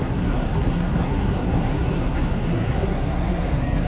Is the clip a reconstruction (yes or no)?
yes